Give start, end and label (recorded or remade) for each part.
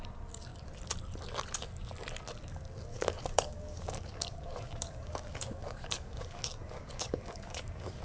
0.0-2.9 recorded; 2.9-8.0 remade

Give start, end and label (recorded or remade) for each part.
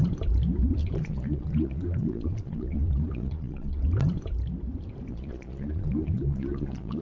0.0-0.8 recorded; 0.8-3.8 remade; 3.8-5.1 recorded; 5.1-7.0 remade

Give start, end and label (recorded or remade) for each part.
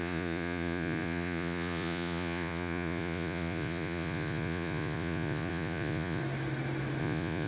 0.0-6.2 remade; 6.2-7.0 recorded; 7.0-7.5 remade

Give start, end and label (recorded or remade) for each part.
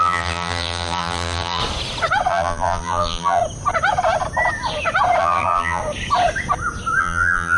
0.0-1.6 remade; 1.6-2.3 recorded; 2.3-3.4 remade; 3.4-5.2 recorded; 5.2-5.8 remade; 5.8-7.0 recorded; 7.0-7.6 remade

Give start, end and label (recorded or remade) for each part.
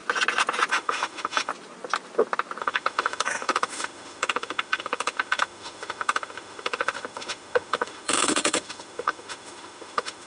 0.0-0.7 recorded; 0.7-1.5 remade; 1.5-2.6 recorded; 2.6-10.3 remade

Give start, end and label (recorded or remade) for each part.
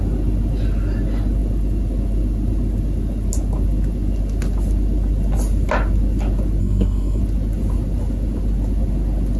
0.0-6.6 recorded; 6.6-7.2 remade; 7.2-9.4 recorded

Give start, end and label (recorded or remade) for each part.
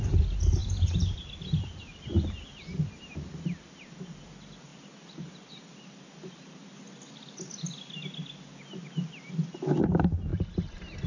0.0-11.1 recorded